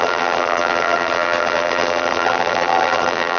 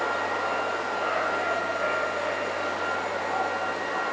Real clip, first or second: second